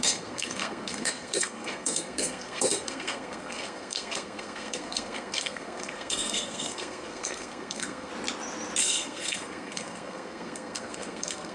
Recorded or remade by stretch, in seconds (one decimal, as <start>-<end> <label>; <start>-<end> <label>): 0.0-8.1 remade; 8.1-8.8 recorded; 8.8-11.5 remade